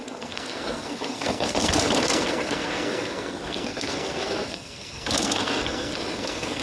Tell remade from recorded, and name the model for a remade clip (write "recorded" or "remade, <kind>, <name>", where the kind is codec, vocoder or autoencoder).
remade, codec, SNAC